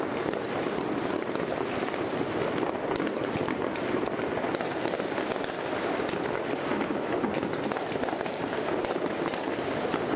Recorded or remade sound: recorded